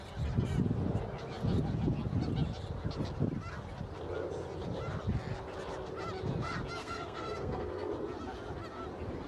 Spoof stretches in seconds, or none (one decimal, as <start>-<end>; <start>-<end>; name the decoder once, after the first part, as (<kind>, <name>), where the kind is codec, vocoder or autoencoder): 6.8-7.9 (codec, SNAC)

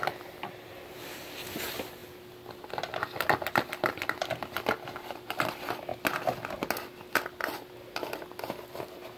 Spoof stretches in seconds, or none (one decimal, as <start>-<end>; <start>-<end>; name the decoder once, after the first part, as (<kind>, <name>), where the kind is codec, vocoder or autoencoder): none